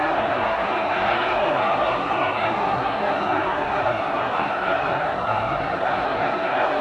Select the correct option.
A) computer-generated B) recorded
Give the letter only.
A